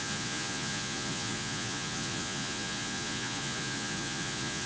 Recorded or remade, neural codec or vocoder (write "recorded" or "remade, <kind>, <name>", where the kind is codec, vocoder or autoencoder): remade, vocoder, Vocos